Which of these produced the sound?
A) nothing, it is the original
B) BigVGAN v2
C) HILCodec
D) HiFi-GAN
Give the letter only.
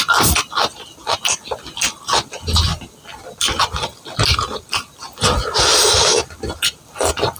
A